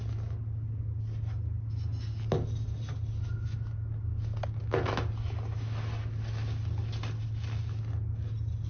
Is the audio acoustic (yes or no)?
yes